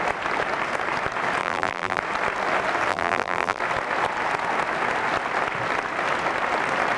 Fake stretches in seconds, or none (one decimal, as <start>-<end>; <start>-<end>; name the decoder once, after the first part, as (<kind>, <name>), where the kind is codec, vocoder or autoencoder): 1.4-2.0 (vocoder, BigVGAN v2); 2.9-3.6